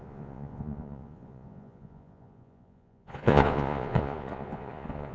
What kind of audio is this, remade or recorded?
remade